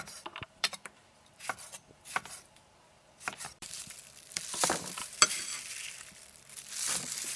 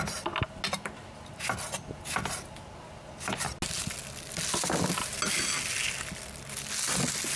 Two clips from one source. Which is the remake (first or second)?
first